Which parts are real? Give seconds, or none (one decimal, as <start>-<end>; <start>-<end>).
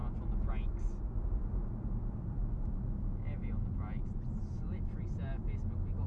0.0-1.6; 3.5-6.1